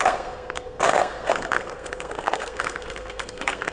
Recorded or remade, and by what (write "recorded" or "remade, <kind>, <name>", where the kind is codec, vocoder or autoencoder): remade, codec, SNAC